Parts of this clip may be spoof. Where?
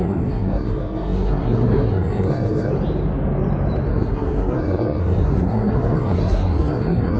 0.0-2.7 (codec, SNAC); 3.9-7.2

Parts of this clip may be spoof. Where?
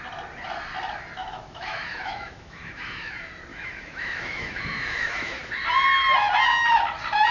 1.2-3.1 (autoencoder, DAC-VAE); 3.5-5.4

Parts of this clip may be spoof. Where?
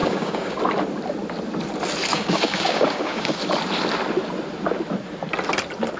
0.0-0.6 (codec, DAC); 2.1-3.4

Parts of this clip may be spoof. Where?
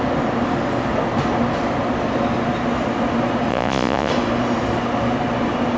3.5-4.1 (vocoder, Vocos)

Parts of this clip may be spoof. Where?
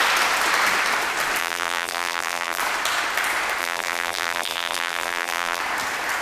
1.4-2.6 (vocoder, BigVGAN v2); 3.6-5.6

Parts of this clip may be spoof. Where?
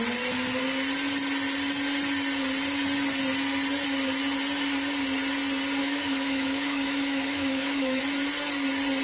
5.8-8.0 (autoencoder, DAC-VAE)